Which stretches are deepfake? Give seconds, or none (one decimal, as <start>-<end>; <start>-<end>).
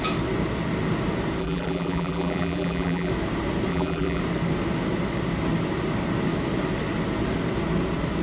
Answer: 1.4-3.1; 3.7-4.2